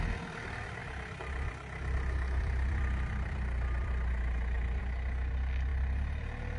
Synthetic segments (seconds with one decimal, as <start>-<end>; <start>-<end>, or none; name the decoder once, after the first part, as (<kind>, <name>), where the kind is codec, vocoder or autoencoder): 0.8-4.8 (vocoder, BigVGAN v2)